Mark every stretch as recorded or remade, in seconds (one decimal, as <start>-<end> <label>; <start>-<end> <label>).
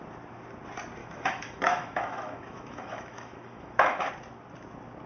0.0-1.0 recorded; 1.0-4.1 remade; 4.1-5.1 recorded